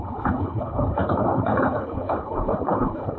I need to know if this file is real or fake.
fake